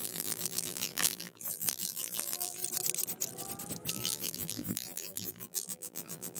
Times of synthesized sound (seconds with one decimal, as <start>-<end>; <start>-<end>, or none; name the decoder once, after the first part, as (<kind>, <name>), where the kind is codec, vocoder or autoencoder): 0.0-2.6 (vocoder, BigVGAN v2); 3.9-6.4